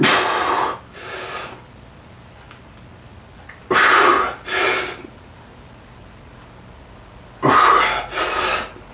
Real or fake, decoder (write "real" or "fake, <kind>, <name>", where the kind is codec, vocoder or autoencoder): real